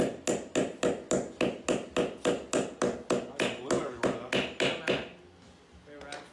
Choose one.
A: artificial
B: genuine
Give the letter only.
B